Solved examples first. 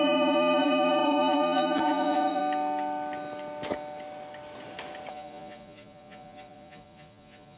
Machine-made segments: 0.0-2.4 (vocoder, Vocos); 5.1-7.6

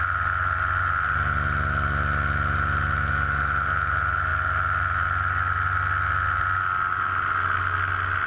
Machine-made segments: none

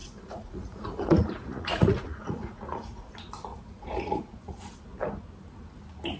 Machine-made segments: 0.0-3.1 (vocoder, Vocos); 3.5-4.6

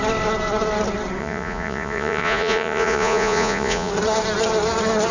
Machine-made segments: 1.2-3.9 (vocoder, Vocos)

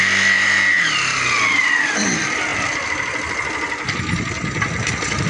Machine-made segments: none

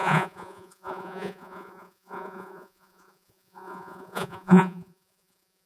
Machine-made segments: 0.0-5.7 (vocoder, Vocos)

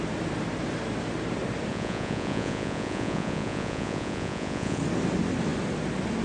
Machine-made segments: 1.7-4.8 (vocoder, Vocos)

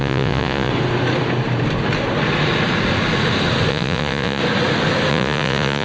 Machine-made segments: 0.0-0.7 (vocoder, Vocos); 3.7-4.4; 5.1-5.8